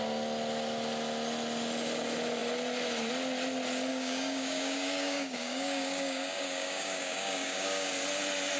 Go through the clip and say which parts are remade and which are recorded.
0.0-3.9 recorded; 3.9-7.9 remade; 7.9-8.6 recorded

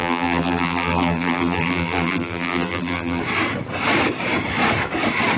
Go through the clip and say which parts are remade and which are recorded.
0.0-3.2 remade; 3.2-5.4 recorded

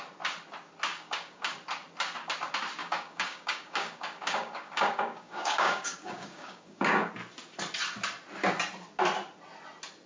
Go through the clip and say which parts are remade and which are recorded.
0.0-0.9 recorded; 0.9-1.5 remade; 1.5-2.8 recorded; 2.8-7.1 remade; 7.1-10.1 recorded

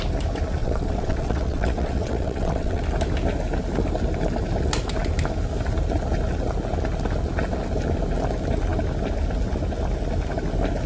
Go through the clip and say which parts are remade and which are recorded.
0.0-0.6 recorded; 0.6-2.8 remade; 2.8-10.9 recorded

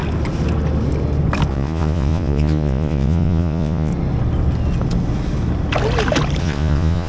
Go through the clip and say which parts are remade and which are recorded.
0.0-1.5 recorded; 1.5-3.9 remade; 3.9-6.4 recorded; 6.4-7.1 remade

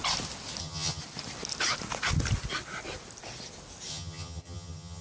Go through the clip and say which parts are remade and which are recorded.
0.0-0.6 recorded; 0.6-1.0 remade; 1.0-3.9 recorded; 3.9-5.0 remade

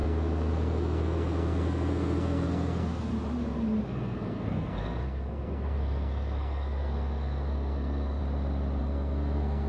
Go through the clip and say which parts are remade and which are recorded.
0.0-3.1 remade; 3.1-3.8 recorded; 3.8-8.2 remade; 8.2-8.8 recorded; 8.8-9.7 remade

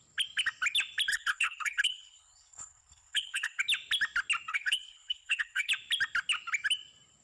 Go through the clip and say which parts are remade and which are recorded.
0.0-1.1 recorded; 1.1-3.6 remade; 3.6-4.5 recorded; 4.5-5.7 remade; 5.7-7.2 recorded